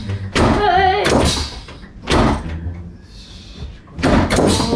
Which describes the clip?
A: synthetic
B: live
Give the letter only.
B